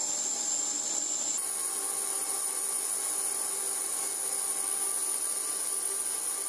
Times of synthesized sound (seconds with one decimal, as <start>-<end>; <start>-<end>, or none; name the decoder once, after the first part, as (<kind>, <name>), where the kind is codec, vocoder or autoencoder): 0.0-0.7 (vocoder, BigVGAN v2)